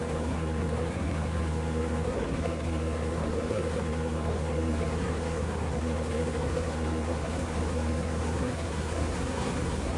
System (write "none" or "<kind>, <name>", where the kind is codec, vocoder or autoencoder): codec, SNAC